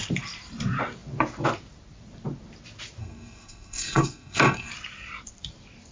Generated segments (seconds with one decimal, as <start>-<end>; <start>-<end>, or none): 3.0-4.7